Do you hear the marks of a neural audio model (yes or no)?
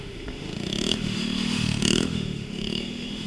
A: yes